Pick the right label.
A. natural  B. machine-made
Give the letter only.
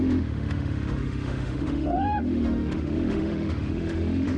B